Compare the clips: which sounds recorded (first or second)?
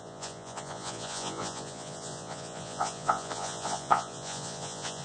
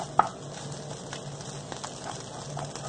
second